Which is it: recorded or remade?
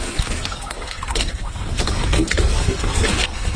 remade